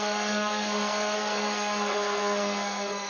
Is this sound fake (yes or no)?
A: yes